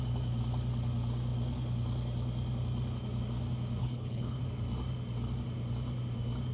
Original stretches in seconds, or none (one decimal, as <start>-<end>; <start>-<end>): 0.0-3.8; 4.4-6.5